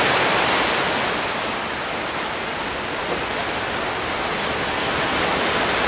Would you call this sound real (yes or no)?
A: yes